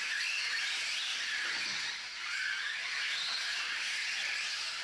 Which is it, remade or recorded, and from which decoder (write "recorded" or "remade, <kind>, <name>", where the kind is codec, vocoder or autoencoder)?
recorded